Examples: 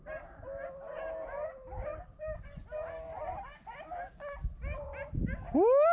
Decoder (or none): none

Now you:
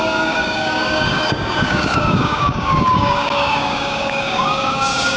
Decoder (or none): codec, DAC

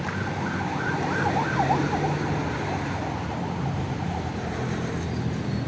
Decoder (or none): none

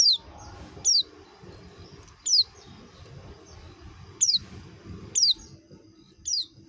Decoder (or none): none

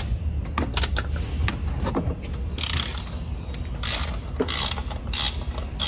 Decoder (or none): none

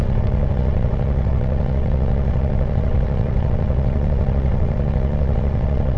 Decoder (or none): vocoder, WaveNeXt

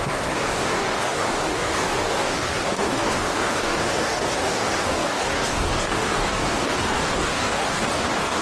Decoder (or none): codec, DAC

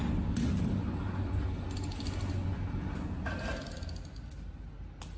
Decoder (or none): none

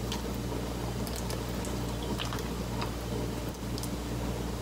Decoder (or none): none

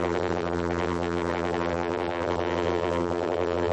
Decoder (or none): vocoder, BigVGAN v2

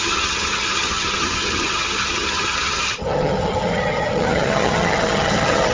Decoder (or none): vocoder, HiFi-GAN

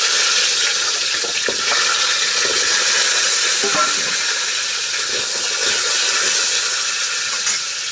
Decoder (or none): none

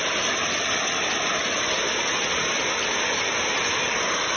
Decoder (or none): none